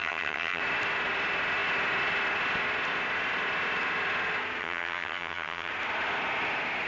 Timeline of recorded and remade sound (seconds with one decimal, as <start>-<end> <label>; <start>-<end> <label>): 0.0-0.6 remade; 0.6-4.6 recorded; 4.6-5.7 remade; 5.7-6.9 recorded